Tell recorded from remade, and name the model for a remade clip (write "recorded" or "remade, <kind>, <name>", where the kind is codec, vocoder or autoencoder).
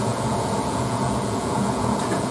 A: remade, vocoder, Vocos